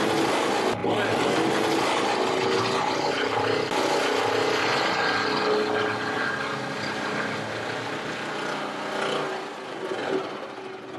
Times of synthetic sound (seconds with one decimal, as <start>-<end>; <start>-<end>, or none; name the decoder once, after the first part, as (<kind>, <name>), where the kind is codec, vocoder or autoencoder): none